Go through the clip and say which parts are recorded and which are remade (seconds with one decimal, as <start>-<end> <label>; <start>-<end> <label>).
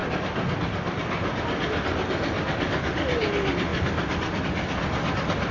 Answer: 0.0-5.5 recorded